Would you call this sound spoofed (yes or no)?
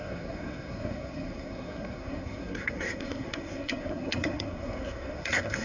yes